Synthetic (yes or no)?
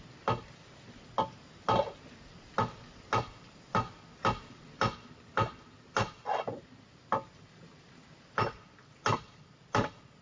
no